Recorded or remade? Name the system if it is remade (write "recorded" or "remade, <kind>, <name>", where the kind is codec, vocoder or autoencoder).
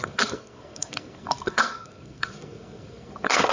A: remade, codec, SNAC